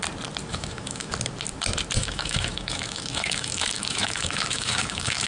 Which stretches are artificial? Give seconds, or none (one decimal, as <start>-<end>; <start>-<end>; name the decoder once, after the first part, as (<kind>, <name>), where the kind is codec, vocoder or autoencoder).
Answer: 0.5-1.1 (autoencoder, DAC-VAE); 2.0-5.3